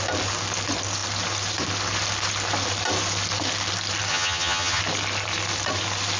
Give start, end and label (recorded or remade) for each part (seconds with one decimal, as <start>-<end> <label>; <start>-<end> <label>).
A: 0.0-4.1 recorded; 4.1-4.8 remade; 4.8-6.2 recorded